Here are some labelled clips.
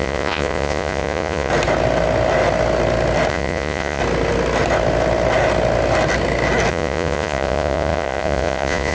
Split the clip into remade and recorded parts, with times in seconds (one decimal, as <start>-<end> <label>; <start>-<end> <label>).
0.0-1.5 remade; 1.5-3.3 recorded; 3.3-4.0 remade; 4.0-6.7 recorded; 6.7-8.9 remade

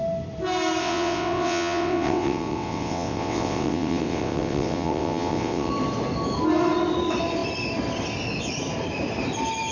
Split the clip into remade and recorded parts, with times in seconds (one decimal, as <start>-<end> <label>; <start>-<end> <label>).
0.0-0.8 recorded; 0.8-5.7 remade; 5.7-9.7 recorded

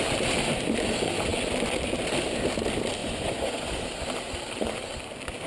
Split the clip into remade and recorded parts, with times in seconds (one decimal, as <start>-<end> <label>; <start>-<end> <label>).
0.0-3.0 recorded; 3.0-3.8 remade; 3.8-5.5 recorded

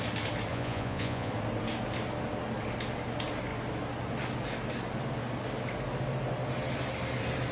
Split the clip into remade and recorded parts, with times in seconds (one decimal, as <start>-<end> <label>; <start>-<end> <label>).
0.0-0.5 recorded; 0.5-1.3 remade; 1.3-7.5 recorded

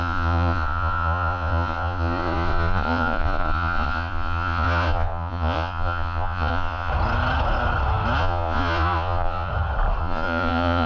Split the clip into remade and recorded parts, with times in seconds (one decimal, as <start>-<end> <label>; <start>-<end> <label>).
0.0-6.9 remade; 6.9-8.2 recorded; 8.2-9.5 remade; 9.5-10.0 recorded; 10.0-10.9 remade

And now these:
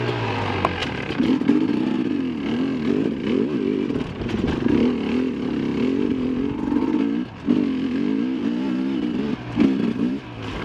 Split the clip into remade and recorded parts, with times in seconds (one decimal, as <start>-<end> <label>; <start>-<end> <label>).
0.0-0.8 recorded; 0.8-2.0 remade; 2.0-10.6 recorded

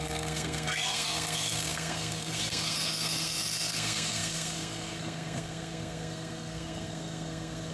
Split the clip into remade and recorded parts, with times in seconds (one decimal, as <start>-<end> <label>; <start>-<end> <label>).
0.0-7.7 remade